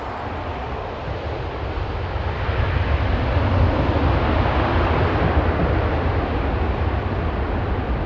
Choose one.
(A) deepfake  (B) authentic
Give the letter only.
B